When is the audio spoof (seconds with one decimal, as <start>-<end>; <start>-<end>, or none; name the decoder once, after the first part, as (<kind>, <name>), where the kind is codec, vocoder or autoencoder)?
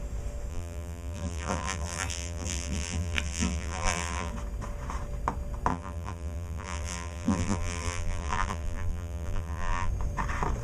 0.5-4.3 (vocoder, BigVGAN v2); 5.7-9.9